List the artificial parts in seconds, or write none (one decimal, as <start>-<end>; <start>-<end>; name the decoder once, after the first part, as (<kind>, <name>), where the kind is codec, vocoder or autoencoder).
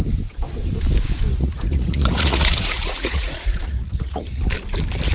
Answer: 1.3-4.4 (vocoder, Vocos)